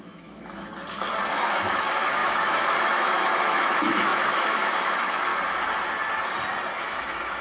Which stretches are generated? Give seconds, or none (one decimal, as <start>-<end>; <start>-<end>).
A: 0.0-0.7; 1.3-5.3; 6.8-7.4